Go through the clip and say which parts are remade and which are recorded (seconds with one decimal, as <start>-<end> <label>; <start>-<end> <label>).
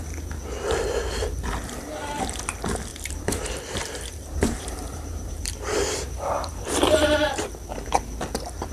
0.0-2.9 recorded; 2.9-7.4 remade; 7.4-8.7 recorded